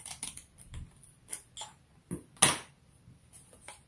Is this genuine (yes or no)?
yes